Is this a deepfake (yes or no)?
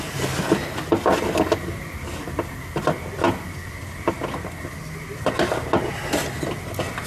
no